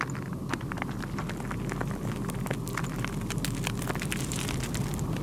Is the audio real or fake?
real